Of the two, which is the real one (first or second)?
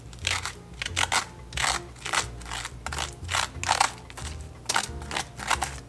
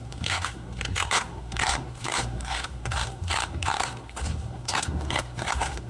first